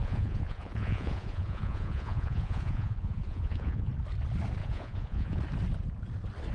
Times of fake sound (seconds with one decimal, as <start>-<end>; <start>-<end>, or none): 0.0-3.9; 4.6-5.4